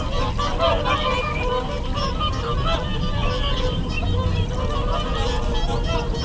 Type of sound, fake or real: real